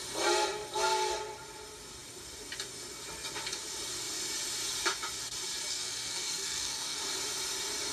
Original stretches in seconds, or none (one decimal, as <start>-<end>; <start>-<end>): 0.0-5.7; 7.0-7.9